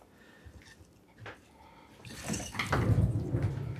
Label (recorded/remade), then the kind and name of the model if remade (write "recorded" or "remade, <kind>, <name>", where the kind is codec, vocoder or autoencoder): recorded